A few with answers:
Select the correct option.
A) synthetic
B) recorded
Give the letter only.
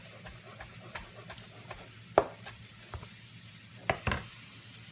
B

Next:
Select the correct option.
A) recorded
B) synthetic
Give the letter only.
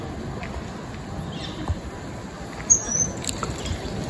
A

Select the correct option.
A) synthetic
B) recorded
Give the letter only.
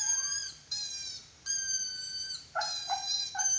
A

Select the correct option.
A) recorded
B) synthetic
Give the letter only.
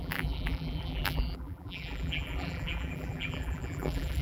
B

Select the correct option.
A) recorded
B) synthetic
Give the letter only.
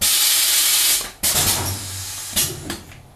A